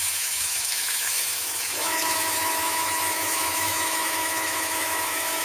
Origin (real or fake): fake